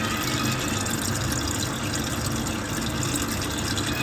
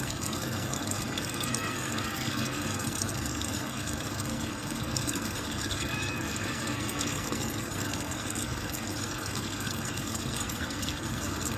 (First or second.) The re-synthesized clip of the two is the second